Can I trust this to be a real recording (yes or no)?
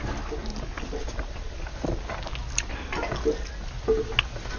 yes